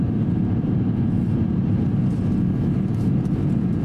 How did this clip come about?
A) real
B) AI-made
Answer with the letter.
B